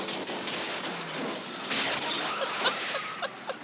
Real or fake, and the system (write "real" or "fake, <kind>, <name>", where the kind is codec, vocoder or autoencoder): real